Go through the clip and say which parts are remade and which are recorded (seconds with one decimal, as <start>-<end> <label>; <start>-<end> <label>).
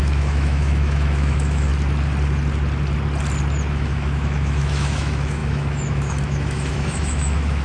0.0-1.7 remade; 1.7-3.7 recorded; 3.7-7.6 remade